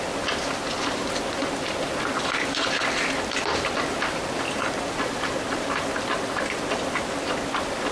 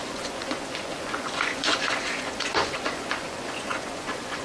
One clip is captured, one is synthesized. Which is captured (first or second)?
first